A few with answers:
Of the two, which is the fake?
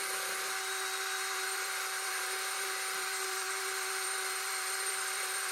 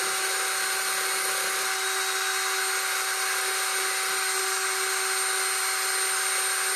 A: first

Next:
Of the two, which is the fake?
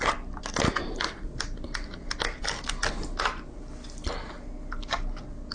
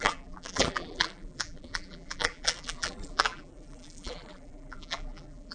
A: second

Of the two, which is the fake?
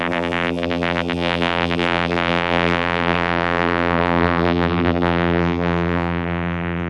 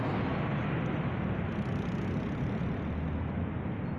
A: first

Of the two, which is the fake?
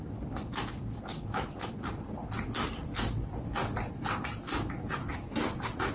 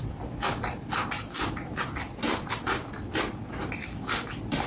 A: second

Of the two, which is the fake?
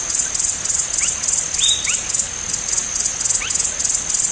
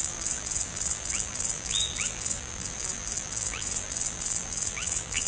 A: second